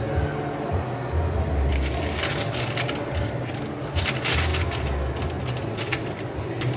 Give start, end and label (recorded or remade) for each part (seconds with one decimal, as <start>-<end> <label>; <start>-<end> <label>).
0.0-6.8 recorded